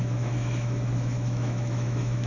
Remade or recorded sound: remade